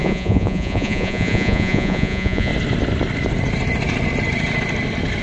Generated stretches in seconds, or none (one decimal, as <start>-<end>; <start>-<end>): 0.0-2.5